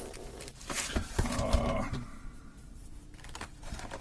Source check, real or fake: fake